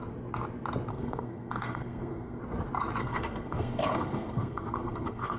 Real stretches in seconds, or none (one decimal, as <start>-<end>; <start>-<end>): 0.0-0.9; 2.4-3.0